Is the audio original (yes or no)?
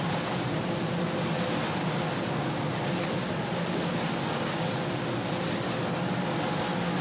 yes